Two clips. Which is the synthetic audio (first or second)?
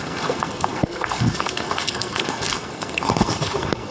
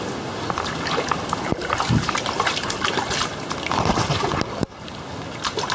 first